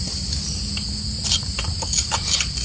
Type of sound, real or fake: real